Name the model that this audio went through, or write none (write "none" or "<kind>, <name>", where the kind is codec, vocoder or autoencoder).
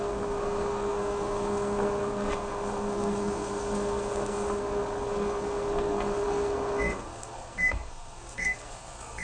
codec, SNAC